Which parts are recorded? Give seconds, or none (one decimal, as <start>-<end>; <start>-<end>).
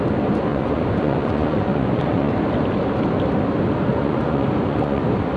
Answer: 0.0-0.5; 2.3-3.9; 5.0-5.4